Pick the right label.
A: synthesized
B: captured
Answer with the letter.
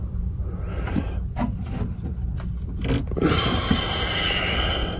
B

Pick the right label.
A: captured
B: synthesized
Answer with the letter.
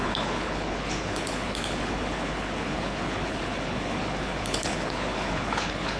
B